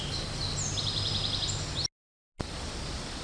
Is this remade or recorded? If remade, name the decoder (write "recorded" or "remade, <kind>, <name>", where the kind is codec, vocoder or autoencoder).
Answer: recorded